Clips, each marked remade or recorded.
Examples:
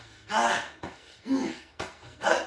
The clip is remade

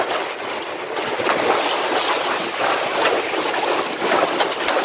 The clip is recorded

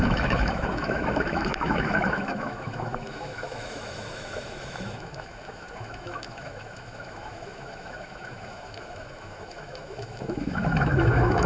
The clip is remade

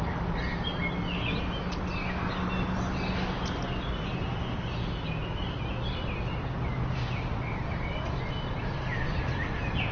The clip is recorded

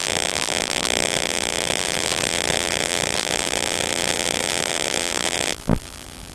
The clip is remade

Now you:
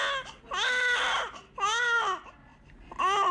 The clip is recorded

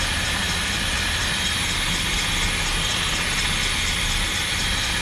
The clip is recorded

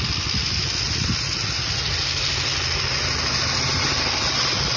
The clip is recorded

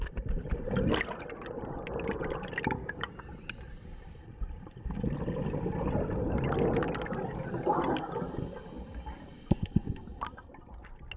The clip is recorded